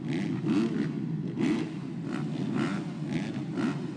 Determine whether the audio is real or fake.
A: real